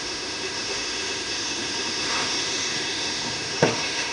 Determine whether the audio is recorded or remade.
remade